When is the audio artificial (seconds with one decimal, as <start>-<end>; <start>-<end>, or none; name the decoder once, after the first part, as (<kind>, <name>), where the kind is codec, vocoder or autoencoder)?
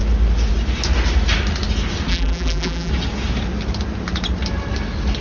2.1-2.9 (vocoder, BigVGAN v2)